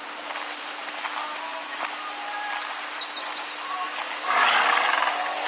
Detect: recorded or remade recorded